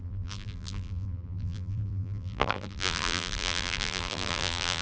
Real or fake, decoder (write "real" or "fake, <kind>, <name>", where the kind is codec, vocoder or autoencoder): fake, vocoder, BigVGAN v2